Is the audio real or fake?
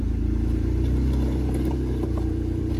fake